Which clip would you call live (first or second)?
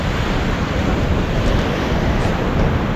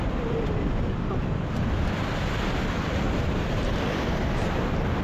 second